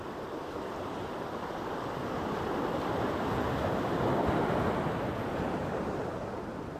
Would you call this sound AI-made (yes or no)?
no